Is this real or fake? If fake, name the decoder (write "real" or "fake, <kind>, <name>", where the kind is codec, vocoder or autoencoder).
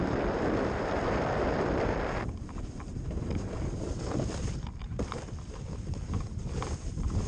fake, vocoder, BigVGAN v2